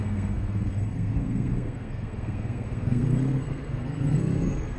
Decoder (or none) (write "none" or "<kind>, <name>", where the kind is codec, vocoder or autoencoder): codec, SNAC